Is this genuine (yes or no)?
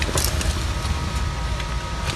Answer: yes